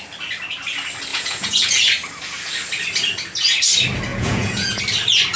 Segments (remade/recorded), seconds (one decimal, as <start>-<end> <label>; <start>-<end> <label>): 0.0-1.1 recorded; 1.1-1.9 remade; 1.9-4.1 recorded; 4.1-4.8 remade; 4.8-5.4 recorded